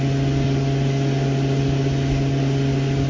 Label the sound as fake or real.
real